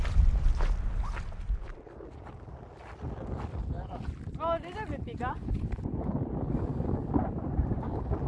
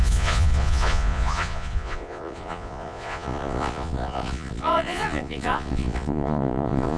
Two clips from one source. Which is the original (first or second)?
first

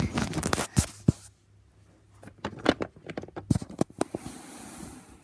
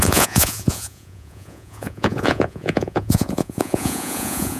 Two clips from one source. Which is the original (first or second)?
first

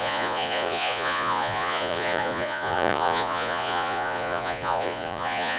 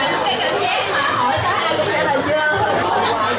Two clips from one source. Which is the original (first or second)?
second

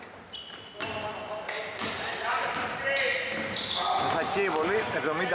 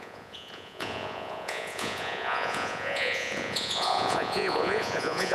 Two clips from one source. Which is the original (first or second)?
first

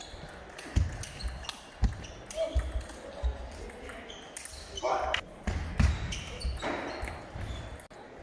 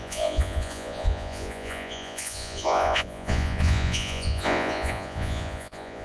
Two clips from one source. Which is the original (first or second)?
first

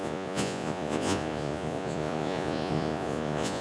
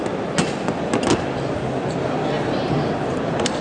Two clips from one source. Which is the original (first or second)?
second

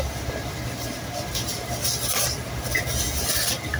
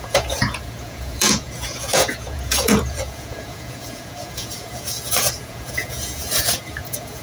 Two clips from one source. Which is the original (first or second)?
first